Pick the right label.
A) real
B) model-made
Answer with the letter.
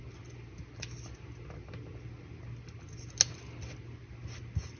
A